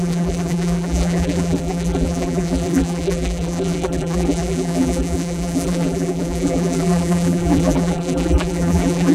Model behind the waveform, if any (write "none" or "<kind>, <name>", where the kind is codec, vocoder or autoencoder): vocoder, BigVGAN v2